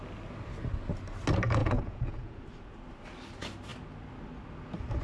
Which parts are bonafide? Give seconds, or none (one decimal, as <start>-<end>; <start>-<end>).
0.0-1.6; 2.4-5.0